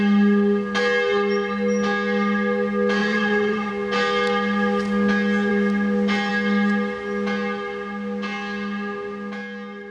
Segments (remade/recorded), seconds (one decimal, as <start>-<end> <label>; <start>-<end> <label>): 0.0-3.0 recorded; 3.0-3.7 remade; 3.7-9.9 recorded